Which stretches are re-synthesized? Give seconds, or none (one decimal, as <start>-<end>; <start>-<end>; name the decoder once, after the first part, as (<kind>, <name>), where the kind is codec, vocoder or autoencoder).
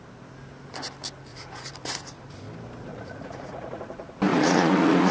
1.3-1.9 (vocoder, Vocos); 2.9-3.8; 4.3-5.1